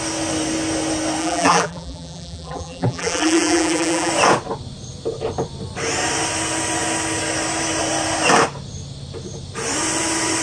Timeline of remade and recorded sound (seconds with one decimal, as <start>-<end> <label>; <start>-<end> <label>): 0.0-1.2 recorded; 1.2-4.1 remade; 4.1-10.4 recorded

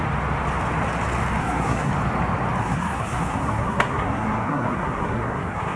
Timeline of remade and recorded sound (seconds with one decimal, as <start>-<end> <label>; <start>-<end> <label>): 0.0-1.4 recorded; 1.4-1.9 remade; 1.9-2.6 recorded; 2.6-5.8 remade

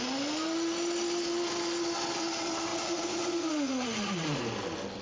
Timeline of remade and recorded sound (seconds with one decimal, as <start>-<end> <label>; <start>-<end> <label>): 0.0-2.7 recorded; 2.7-4.4 remade; 4.4-5.0 recorded

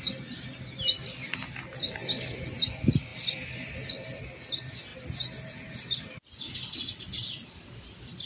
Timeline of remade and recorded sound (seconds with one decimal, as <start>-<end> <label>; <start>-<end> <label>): 0.0-8.3 recorded

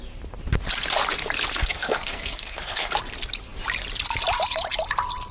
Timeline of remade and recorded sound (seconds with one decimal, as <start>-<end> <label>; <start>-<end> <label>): 0.0-1.5 recorded; 1.5-2.9 remade; 2.9-5.3 recorded

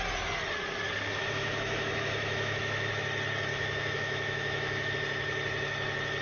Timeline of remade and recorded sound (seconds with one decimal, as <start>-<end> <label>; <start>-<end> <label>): 0.0-1.2 recorded; 1.2-2.9 remade; 2.9-3.5 recorded; 3.5-4.9 remade; 4.9-6.2 recorded

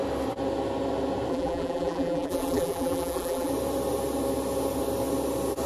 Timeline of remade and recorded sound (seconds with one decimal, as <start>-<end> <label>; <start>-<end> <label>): 0.0-1.3 recorded; 1.3-3.5 remade; 3.5-5.7 recorded